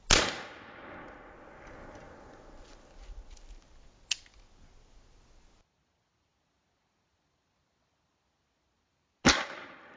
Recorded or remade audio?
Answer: recorded